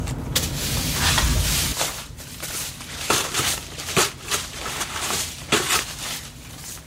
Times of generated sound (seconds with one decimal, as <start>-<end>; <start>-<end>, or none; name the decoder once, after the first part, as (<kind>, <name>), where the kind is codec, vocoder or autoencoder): 1.7-5.8 (vocoder, BigVGAN v2)